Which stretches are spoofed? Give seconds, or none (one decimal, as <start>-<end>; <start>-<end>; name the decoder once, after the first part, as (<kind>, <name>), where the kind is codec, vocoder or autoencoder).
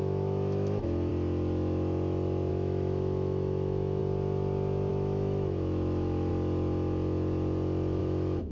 0.0-1.1 (autoencoder, DAC-VAE); 2.5-4.0; 4.9-6.3; 8.0-8.5